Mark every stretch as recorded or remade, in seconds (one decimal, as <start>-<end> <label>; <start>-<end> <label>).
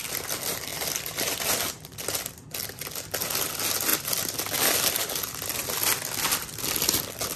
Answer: 0.0-7.4 recorded